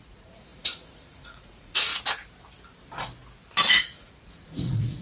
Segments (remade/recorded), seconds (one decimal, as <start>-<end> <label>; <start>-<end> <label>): 0.0-1.9 remade; 1.9-3.8 recorded; 3.8-5.0 remade